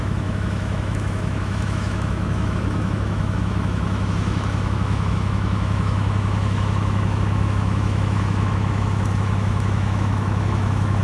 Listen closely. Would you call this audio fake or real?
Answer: fake